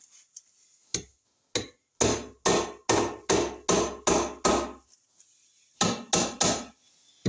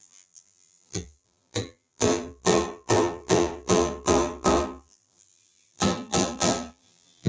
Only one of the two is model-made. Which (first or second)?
second